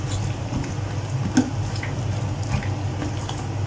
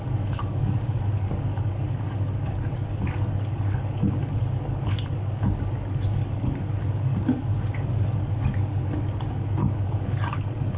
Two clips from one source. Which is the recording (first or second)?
first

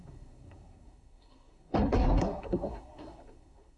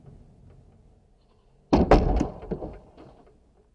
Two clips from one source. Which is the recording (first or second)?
second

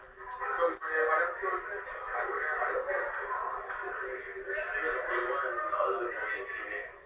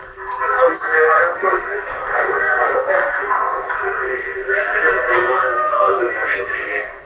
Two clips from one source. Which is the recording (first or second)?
first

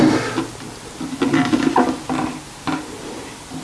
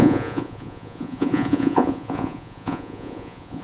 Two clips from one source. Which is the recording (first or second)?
first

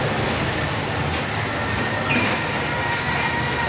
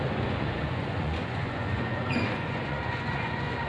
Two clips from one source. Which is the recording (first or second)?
first